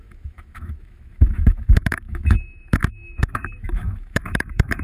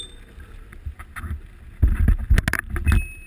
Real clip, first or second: second